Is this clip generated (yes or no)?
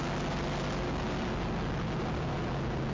no